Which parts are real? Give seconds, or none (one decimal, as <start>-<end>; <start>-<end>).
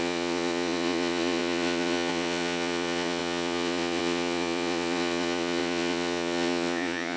none